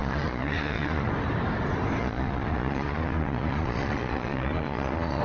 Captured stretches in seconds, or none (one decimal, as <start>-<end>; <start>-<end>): 1.1-2.0